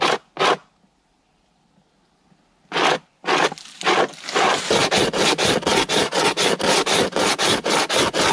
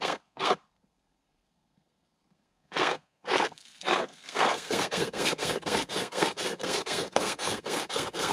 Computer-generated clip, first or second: second